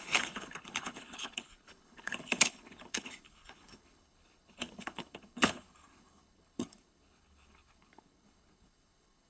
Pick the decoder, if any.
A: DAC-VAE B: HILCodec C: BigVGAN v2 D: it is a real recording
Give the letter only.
B